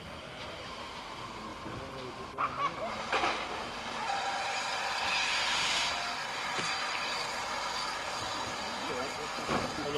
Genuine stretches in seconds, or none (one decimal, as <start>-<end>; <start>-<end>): 0.0-10.0